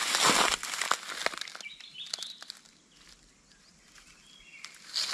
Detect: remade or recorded recorded